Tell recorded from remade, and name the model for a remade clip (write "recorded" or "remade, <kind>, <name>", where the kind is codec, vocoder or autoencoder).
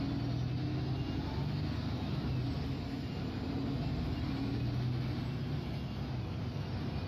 recorded